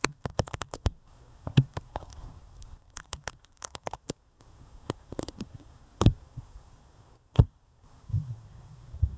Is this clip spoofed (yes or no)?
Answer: yes